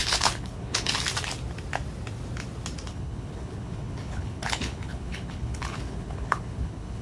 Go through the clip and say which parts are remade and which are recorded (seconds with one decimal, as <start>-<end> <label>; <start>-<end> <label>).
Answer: 0.0-0.9 remade; 0.9-2.9 recorded; 2.9-7.0 remade